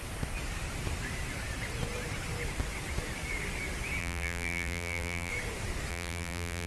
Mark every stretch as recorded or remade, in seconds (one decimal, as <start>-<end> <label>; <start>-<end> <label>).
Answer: 0.0-4.0 recorded; 4.0-5.3 remade; 5.3-5.9 recorded; 5.9-6.7 remade